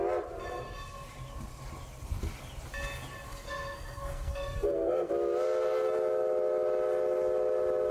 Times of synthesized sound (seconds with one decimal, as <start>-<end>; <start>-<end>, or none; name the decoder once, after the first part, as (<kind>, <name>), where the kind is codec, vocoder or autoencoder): 3.3-5.1 (codec, SNAC)